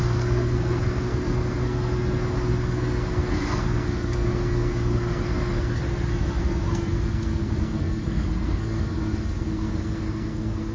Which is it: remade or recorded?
remade